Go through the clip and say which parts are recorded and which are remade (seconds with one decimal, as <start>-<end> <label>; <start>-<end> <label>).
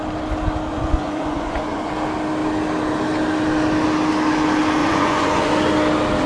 0.0-0.7 recorded; 0.7-1.9 remade; 1.9-4.8 recorded; 4.8-5.5 remade; 5.5-6.3 recorded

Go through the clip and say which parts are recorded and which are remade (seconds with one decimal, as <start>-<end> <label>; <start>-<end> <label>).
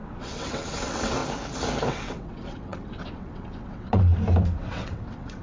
0.0-1.2 remade; 1.2-1.9 recorded; 1.9-4.1 remade; 4.1-4.6 recorded; 4.6-5.4 remade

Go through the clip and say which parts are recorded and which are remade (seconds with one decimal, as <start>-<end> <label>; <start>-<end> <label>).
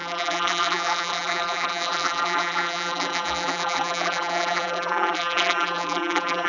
0.0-6.5 remade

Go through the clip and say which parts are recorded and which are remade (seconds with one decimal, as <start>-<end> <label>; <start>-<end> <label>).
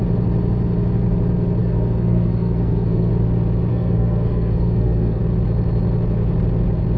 0.0-1.6 recorded; 1.6-3.1 remade; 3.1-3.7 recorded; 3.7-5.2 remade; 5.2-7.0 recorded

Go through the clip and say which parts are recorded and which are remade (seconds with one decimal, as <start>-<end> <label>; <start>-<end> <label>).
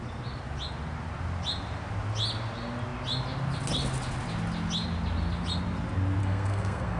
0.0-6.2 recorded; 6.2-7.0 remade